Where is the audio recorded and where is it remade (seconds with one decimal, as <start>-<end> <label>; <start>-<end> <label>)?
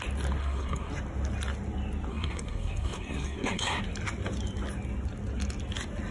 0.0-0.4 recorded; 0.4-0.9 remade; 0.9-2.1 recorded; 2.1-3.8 remade; 3.8-6.1 recorded